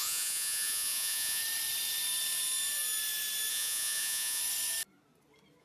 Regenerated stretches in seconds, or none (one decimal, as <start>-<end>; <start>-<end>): 0.0-1.4; 3.5-4.4